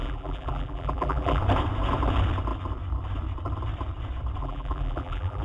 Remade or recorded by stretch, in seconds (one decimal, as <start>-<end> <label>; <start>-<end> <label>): 0.0-1.4 remade; 1.4-4.4 recorded; 4.4-5.4 remade